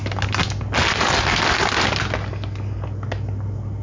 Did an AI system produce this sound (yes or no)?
no